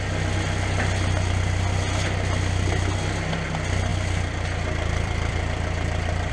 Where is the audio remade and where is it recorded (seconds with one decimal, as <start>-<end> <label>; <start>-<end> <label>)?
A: 0.0-3.9 recorded; 3.9-6.3 remade